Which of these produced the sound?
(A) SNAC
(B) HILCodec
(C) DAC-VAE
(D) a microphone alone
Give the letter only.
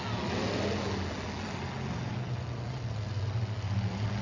D